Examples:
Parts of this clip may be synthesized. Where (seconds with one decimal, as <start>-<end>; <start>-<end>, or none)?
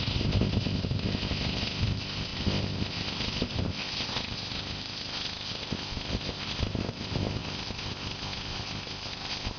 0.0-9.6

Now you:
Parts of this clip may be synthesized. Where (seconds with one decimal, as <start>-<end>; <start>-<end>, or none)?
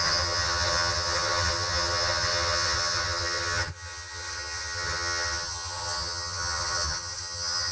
0.0-7.7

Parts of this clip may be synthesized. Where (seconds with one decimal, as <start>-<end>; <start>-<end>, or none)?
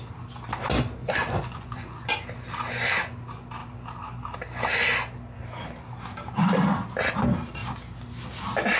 1.0-2.1